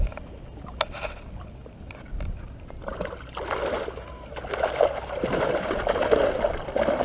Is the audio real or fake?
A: real